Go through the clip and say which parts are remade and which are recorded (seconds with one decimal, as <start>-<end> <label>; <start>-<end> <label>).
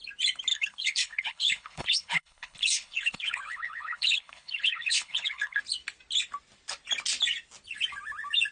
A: 0.0-0.5 recorded; 0.5-5.6 remade; 5.6-8.5 recorded